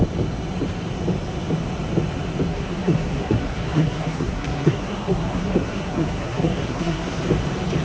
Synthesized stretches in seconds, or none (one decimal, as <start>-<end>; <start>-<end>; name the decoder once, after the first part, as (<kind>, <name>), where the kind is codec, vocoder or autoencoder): 2.5-7.2 (codec, SNAC)